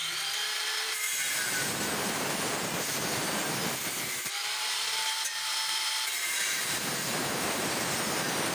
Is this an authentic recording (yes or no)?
no